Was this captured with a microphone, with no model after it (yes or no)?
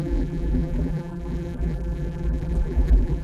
no